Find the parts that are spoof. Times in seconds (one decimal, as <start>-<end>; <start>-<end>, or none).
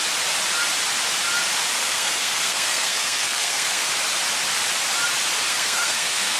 1.8-3.9; 5.5-6.4